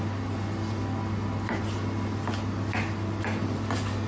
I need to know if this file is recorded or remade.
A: recorded